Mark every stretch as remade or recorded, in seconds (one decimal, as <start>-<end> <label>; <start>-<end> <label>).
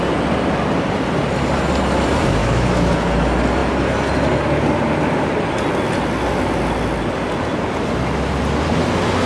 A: 0.0-2.4 recorded; 2.4-2.9 remade; 2.9-9.3 recorded